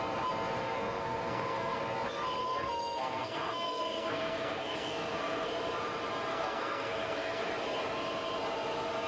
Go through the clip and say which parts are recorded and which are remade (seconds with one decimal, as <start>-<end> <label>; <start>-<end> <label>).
0.0-0.6 recorded; 0.6-1.8 remade; 1.8-2.4 recorded; 2.4-5.5 remade; 5.5-6.3 recorded; 6.3-7.5 remade; 7.5-9.1 recorded